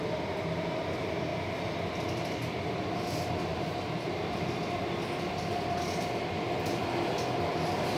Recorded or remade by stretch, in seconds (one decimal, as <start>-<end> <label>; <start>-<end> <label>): 0.0-3.5 recorded; 3.5-4.1 remade; 4.1-8.0 recorded